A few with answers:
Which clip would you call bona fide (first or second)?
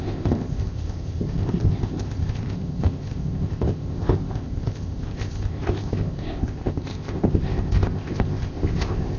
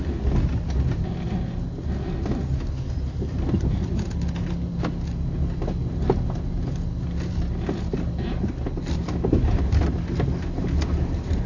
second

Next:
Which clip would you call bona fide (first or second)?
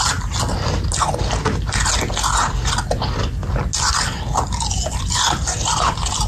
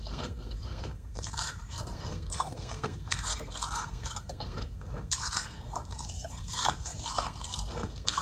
first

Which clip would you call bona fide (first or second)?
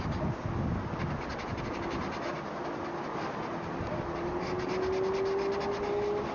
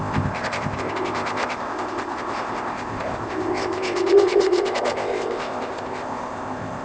first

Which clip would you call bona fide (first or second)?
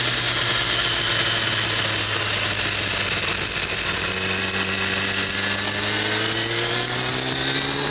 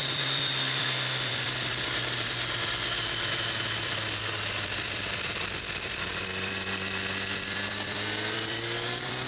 first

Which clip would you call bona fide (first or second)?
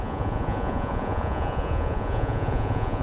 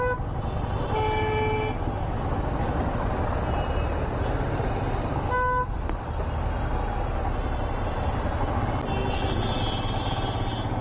second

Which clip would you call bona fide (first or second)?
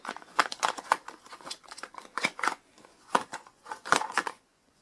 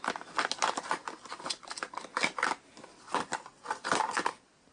second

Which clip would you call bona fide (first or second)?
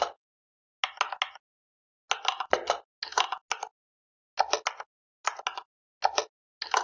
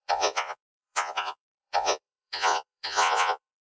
first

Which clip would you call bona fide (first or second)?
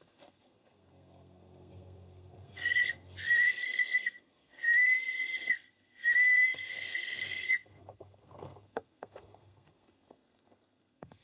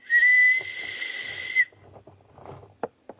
second